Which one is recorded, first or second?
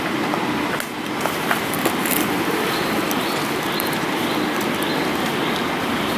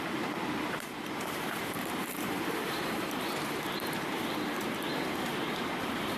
first